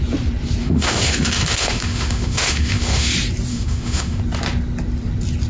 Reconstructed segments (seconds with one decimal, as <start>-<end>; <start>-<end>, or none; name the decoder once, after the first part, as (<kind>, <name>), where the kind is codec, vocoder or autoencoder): 0.6-3.1 (autoencoder, DAC-VAE); 3.5-4.2